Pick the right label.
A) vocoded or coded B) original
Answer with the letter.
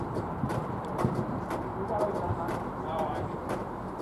A